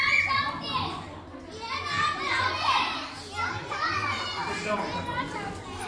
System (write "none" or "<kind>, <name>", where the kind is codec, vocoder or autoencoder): none